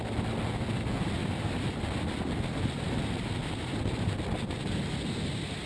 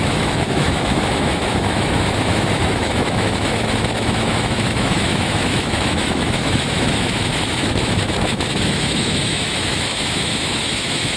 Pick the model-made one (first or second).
second